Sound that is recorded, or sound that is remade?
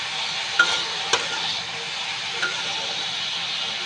recorded